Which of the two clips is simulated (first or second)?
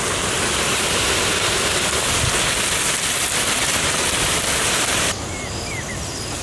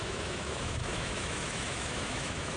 second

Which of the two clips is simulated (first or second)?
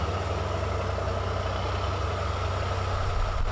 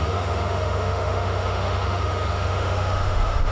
second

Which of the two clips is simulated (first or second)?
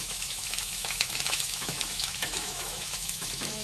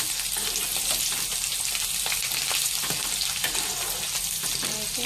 first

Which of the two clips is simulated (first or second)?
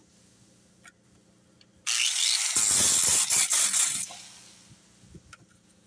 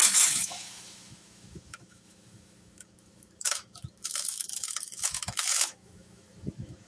second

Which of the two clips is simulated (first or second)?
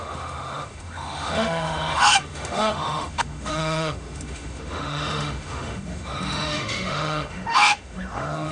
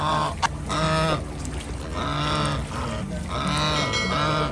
first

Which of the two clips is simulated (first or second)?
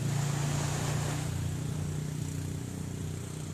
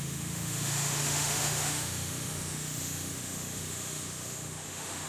second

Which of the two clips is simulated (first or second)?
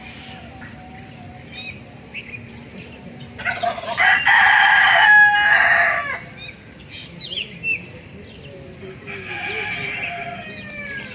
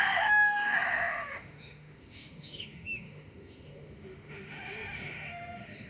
second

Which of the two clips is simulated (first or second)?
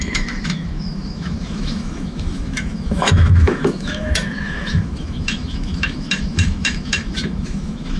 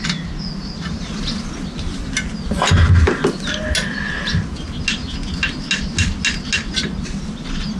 first